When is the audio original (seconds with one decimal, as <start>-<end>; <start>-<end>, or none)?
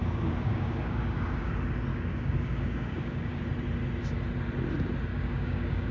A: 1.5-1.9; 3.4-5.1